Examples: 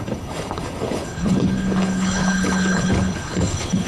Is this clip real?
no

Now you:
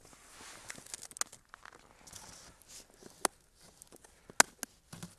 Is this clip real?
yes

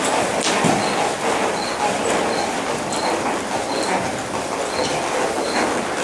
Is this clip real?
yes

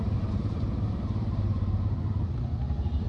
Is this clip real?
no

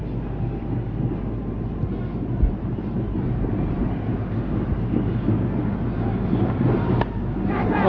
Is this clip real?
yes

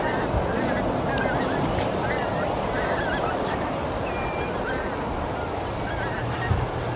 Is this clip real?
yes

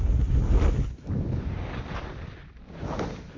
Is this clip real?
yes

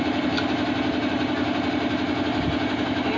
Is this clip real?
yes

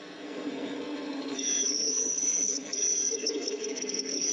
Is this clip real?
no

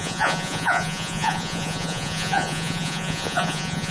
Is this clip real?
no